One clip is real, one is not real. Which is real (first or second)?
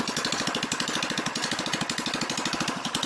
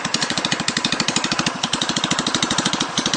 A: first